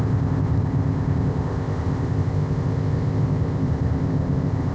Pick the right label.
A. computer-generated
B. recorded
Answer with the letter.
A